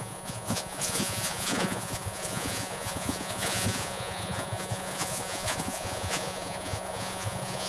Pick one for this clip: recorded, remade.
remade